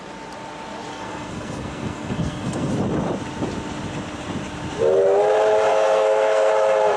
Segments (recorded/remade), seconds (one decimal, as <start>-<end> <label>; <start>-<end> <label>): 0.0-0.9 recorded; 0.9-2.7 remade; 2.7-5.7 recorded; 5.7-6.5 remade; 6.5-7.0 recorded